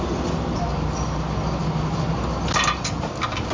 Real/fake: real